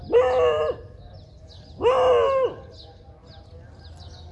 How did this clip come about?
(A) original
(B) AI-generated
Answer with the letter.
A